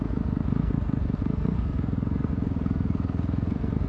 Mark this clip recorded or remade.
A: remade